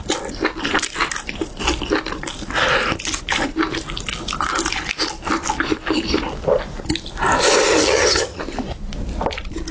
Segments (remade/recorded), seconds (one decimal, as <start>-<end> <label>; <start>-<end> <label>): 0.0-7.7 recorded; 7.7-8.4 remade; 8.4-9.7 recorded